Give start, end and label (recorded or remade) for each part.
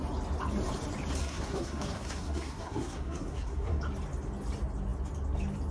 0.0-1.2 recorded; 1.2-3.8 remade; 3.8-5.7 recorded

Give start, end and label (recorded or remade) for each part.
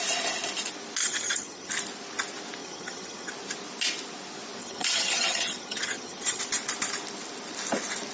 0.0-1.0 recorded; 1.0-1.7 remade; 1.7-2.6 recorded; 2.6-3.3 remade; 3.3-4.6 recorded; 4.6-6.4 remade; 6.4-8.1 recorded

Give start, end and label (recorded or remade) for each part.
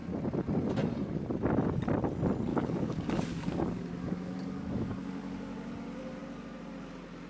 0.0-2.5 recorded; 2.5-5.7 remade; 5.7-7.3 recorded